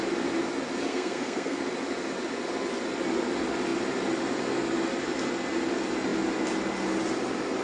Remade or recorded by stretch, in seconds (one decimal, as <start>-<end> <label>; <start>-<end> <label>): 0.0-0.9 recorded; 0.9-1.6 remade; 1.6-7.6 recorded